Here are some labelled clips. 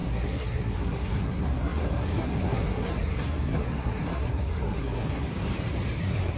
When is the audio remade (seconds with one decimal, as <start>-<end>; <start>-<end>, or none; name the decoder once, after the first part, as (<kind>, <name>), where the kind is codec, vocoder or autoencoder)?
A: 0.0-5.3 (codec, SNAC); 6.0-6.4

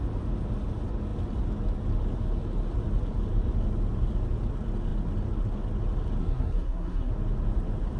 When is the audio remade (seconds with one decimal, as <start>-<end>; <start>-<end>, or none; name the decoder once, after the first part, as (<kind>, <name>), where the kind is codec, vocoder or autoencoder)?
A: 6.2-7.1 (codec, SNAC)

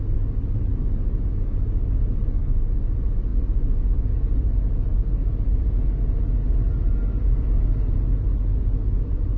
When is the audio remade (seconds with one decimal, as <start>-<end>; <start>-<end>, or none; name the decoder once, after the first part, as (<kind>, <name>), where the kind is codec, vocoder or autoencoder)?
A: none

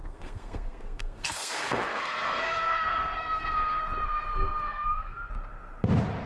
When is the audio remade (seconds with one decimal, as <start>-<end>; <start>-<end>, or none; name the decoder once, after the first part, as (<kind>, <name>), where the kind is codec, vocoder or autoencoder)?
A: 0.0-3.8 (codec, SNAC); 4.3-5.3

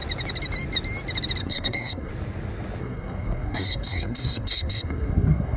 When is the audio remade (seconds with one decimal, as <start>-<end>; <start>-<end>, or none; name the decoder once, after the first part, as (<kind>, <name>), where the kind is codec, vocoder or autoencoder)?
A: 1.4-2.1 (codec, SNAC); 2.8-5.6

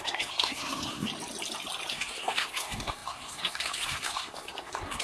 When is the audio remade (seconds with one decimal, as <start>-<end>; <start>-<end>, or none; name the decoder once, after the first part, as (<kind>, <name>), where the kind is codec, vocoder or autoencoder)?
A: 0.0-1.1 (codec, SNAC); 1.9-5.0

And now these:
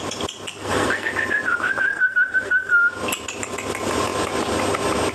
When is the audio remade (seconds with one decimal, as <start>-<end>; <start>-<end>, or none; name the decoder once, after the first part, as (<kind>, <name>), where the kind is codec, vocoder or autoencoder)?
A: 0.5-1.1 (codec, SNAC); 1.9-2.8